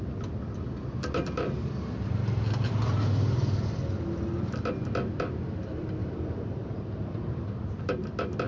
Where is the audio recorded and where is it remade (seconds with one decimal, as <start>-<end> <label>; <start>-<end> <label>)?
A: 0.0-6.0 recorded; 6.0-7.9 remade; 7.9-8.5 recorded